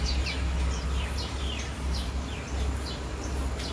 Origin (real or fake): real